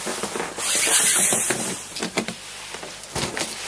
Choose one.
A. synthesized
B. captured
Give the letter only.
B